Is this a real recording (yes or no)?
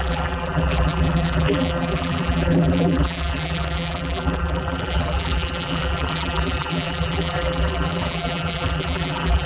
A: no